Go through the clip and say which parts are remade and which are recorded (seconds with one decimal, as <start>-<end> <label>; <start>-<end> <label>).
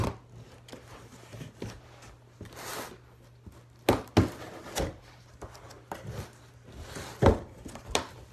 0.0-8.3 recorded